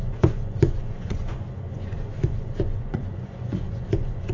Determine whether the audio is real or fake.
fake